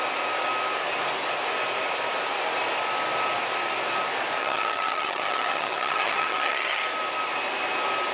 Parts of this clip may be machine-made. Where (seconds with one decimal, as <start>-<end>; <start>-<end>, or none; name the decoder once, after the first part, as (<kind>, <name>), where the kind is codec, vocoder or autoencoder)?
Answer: 4.4-6.8 (vocoder, HiFi-GAN)